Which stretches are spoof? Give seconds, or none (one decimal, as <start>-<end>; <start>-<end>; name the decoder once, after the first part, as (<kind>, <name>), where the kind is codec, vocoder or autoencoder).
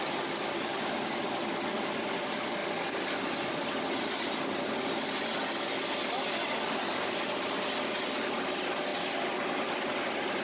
none